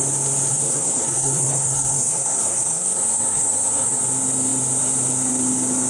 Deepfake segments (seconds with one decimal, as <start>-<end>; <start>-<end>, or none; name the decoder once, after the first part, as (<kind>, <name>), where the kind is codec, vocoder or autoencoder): 0.5-4.0 (codec, SNAC)